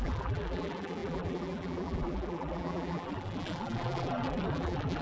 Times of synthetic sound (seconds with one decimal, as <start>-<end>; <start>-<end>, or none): 0.0-5.0